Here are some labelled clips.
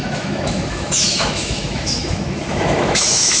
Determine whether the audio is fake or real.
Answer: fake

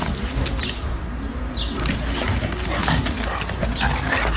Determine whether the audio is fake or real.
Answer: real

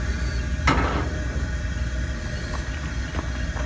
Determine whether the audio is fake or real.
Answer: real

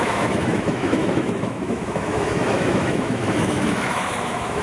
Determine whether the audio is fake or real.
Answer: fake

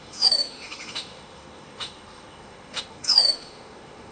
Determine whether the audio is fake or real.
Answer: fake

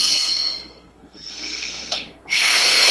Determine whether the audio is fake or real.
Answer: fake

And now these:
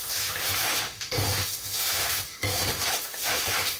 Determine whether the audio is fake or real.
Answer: fake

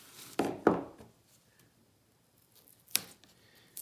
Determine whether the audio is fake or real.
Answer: real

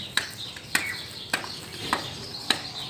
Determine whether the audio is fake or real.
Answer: fake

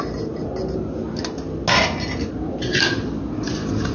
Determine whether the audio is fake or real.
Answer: real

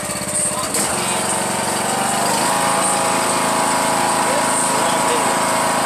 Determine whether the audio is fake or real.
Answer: real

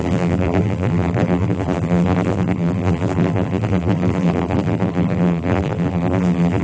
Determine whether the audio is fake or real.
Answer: fake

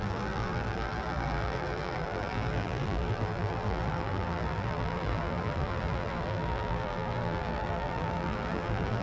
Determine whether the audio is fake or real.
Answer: fake